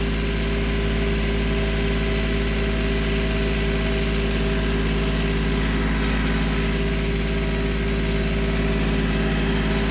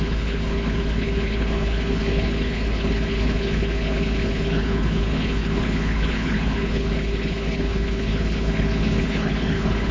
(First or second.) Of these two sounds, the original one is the first